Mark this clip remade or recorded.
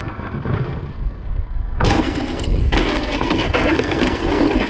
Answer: remade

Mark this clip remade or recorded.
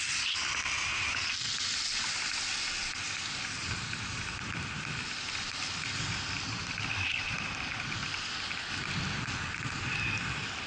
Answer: recorded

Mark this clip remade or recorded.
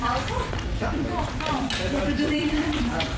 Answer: recorded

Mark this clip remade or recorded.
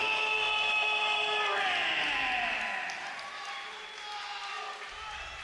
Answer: recorded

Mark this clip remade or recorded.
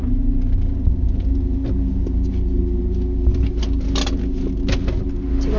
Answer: recorded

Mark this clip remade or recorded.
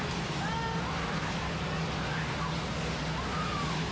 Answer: recorded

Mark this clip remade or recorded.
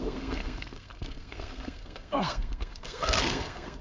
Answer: remade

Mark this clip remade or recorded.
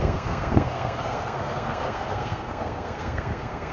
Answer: remade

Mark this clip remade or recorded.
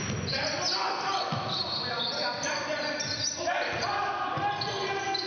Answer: recorded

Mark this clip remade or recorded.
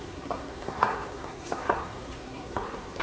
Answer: remade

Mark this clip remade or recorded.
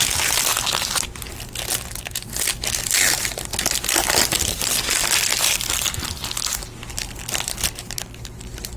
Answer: recorded